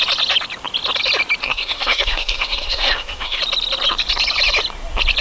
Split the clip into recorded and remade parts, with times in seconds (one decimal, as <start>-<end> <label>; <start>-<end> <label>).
0.0-1.4 recorded; 1.4-3.4 remade; 3.4-5.2 recorded